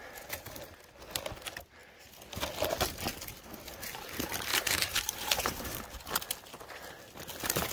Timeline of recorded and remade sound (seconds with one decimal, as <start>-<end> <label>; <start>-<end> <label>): 0.0-4.5 recorded; 4.5-5.8 remade; 5.8-7.7 recorded